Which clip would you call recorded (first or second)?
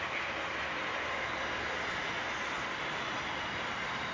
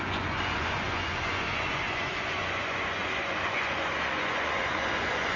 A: first